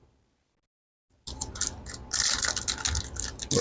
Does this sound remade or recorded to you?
recorded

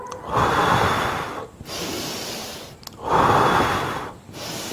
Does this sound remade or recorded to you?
recorded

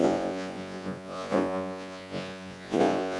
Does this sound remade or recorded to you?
remade